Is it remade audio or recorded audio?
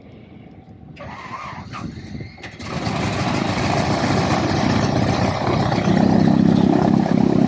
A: recorded